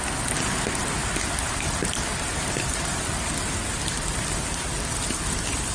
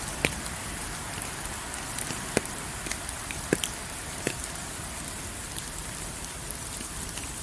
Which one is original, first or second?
first